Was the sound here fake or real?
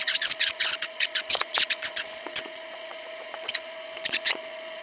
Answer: fake